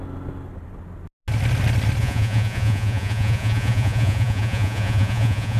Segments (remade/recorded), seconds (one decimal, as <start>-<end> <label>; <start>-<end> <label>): 0.0-2.0 recorded; 2.0-5.6 remade